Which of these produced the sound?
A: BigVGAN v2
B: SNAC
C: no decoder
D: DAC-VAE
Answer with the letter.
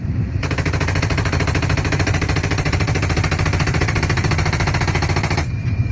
A